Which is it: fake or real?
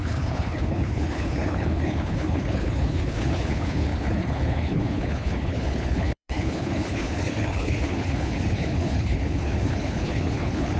fake